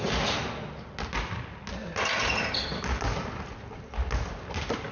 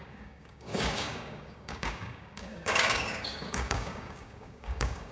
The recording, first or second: first